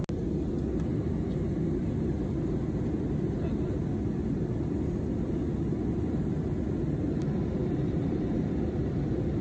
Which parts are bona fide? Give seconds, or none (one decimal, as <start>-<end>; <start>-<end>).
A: 0.0-7.6; 8.6-9.4